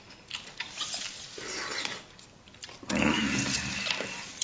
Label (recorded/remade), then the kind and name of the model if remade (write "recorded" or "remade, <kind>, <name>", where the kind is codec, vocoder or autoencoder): recorded